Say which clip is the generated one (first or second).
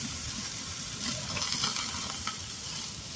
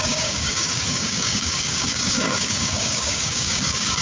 second